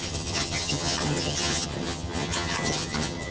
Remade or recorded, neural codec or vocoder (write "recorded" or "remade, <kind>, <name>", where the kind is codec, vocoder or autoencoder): remade, vocoder, HiFi-GAN